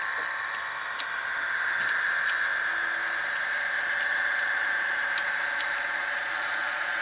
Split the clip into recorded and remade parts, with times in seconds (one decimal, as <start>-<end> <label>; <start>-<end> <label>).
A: 0.0-7.0 recorded